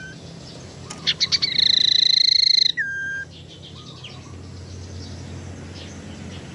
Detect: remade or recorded recorded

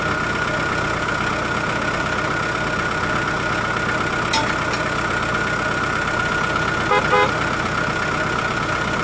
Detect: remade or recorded recorded